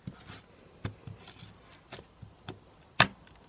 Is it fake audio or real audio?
real